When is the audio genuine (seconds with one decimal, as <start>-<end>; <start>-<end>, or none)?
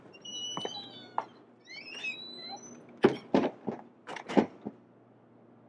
0.0-5.7